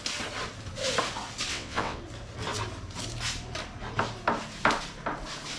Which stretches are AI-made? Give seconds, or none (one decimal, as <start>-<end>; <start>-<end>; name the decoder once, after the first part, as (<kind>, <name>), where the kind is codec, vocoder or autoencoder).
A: 1.5-2.0 (vocoder, WaveNeXt)